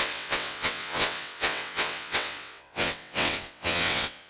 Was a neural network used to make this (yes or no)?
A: yes